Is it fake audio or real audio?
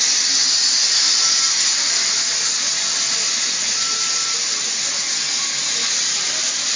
real